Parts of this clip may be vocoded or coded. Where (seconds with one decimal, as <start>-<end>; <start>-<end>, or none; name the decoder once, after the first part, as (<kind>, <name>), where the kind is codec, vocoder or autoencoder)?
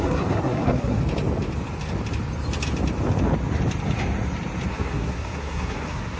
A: 0.0-1.0 (codec, SNAC); 4.7-6.2